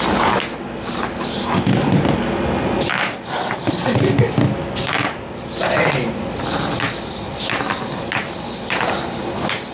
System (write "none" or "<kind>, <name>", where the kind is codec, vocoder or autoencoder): none